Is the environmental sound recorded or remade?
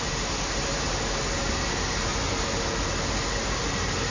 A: recorded